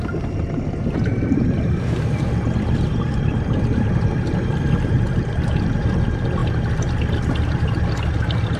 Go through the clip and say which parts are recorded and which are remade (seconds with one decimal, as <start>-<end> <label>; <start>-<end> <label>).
0.0-6.4 remade; 6.4-7.8 recorded; 7.8-8.6 remade